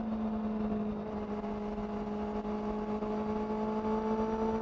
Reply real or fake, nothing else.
real